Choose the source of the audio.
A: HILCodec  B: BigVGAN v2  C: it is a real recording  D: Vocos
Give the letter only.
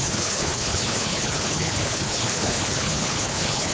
A